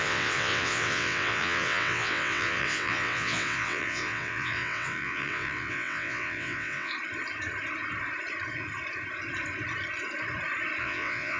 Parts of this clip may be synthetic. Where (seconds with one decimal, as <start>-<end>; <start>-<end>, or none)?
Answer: 0.0-6.9; 10.8-11.4